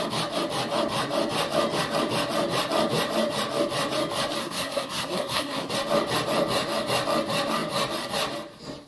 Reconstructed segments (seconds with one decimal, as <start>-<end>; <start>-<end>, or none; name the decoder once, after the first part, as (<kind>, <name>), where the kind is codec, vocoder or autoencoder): 4.4-5.7 (codec, SNAC)

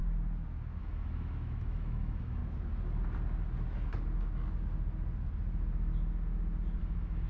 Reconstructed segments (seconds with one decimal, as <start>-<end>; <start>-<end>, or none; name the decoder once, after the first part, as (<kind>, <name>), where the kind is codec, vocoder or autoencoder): 0.8-2.4 (autoencoder, DAC-VAE); 6.8-7.3

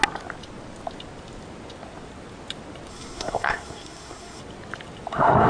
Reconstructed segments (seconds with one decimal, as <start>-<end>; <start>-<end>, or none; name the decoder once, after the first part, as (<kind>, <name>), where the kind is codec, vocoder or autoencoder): 2.9-4.4 (codec, SNAC)

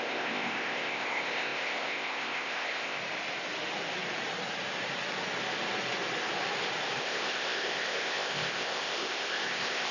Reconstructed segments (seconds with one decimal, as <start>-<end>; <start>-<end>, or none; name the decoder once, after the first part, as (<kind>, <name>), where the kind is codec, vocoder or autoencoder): 0.0-3.0 (codec, ZipCodec); 7.0-9.9

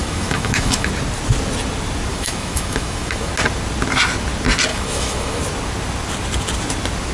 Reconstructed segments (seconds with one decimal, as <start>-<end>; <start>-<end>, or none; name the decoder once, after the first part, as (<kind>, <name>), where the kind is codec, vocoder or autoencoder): 0.0-0.9 (autoencoder, DAC-VAE); 2.1-3.3; 4.7-5.4